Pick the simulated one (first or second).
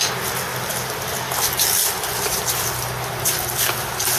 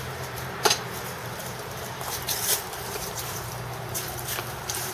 second